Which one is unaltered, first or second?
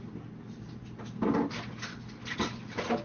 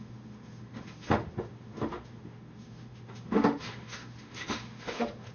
first